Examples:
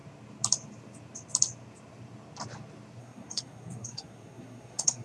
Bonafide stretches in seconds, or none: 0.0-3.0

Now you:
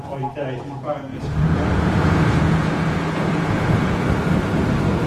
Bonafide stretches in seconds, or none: 0.0-1.1; 4.0-5.1